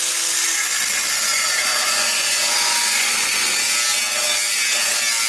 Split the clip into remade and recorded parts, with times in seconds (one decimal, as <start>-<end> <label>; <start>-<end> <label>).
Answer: 0.0-1.3 recorded; 1.3-3.4 remade; 3.4-5.3 recorded